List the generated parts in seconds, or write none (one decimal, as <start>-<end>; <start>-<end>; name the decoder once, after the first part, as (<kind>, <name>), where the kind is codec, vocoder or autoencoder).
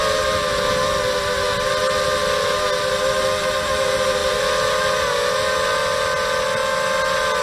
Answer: none